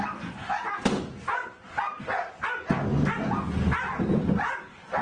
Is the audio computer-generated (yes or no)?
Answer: no